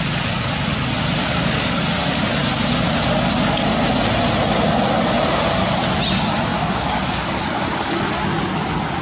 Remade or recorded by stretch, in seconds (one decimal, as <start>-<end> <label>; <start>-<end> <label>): 0.0-1.2 recorded; 1.2-1.8 remade; 1.8-6.5 recorded; 6.5-8.1 remade; 8.1-9.0 recorded